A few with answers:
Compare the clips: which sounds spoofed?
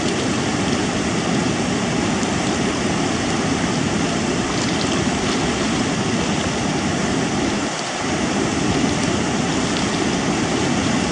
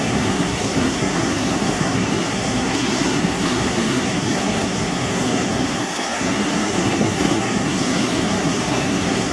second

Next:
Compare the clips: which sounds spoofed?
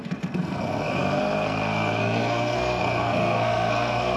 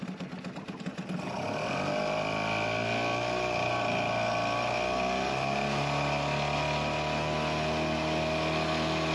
first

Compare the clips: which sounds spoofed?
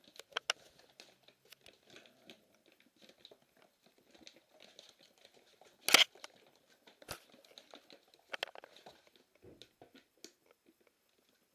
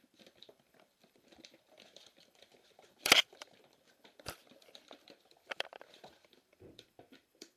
second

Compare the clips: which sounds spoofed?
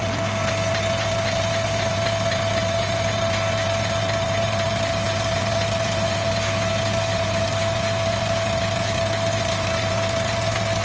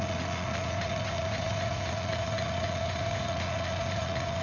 second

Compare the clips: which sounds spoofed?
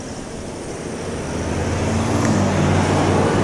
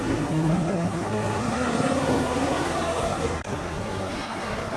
second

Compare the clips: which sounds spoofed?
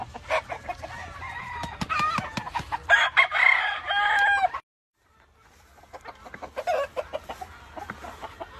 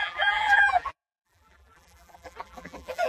second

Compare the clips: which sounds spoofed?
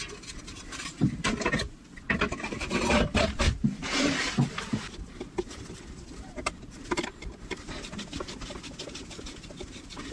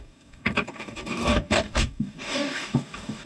second